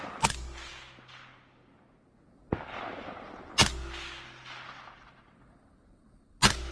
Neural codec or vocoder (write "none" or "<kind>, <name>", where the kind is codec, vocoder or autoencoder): none